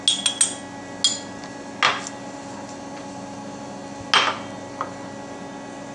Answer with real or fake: real